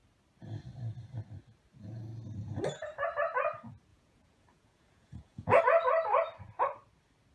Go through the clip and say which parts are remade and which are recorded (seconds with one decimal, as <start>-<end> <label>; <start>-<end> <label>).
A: 0.0-3.9 recorded; 3.9-5.6 remade; 5.6-7.3 recorded